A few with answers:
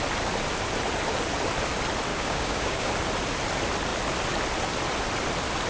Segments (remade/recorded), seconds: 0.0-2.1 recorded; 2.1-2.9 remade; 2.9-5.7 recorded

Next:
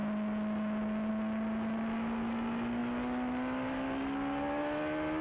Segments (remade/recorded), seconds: 0.0-5.2 recorded